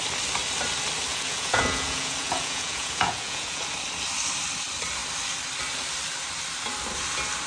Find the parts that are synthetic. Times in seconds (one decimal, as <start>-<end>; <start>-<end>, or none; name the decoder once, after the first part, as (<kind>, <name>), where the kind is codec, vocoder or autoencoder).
1.1-3.6 (vocoder, Vocos)